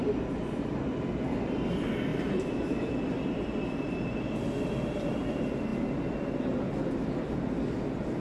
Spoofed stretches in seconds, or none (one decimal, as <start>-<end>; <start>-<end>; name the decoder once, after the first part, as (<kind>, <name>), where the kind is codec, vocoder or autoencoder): 0.0-0.8 (vocoder, BigVGAN v2); 2.1-2.9